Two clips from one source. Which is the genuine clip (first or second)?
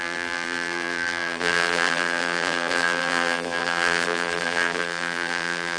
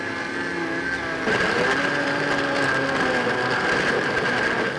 second